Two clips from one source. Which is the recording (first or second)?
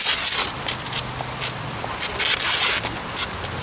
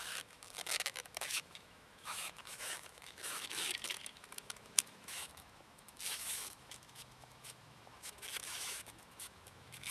first